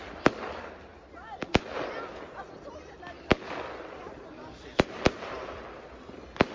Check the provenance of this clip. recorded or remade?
recorded